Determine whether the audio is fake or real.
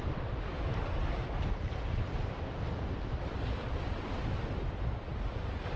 fake